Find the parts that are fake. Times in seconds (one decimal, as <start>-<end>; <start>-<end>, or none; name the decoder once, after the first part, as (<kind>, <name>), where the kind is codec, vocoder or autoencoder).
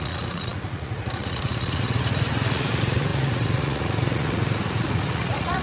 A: 0.0-5.6 (vocoder, Vocos)